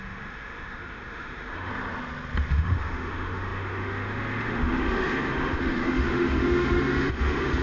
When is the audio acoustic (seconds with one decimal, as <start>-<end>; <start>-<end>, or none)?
1.7-2.5